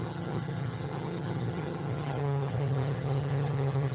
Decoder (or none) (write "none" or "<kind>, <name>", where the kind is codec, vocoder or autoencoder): vocoder, HiFi-GAN